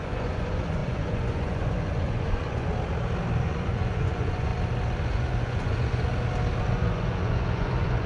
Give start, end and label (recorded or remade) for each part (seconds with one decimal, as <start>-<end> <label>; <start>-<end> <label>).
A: 0.0-2.7 remade; 2.7-3.4 recorded; 3.4-4.5 remade; 4.5-5.0 recorded; 5.0-6.1 remade; 6.1-6.6 recorded; 6.6-8.1 remade